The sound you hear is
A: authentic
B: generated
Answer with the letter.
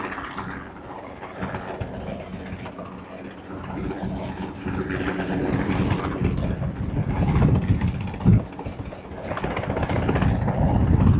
A